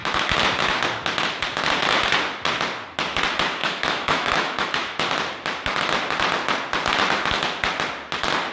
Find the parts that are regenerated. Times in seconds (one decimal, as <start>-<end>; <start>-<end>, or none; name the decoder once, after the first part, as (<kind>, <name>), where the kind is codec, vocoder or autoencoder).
0.0-0.8 (autoencoder, DAC-VAE); 3.6-5.0